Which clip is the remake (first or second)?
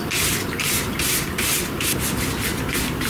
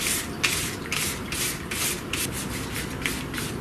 first